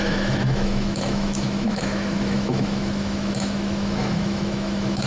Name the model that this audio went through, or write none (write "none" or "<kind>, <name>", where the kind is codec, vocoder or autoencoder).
autoencoder, DAC-VAE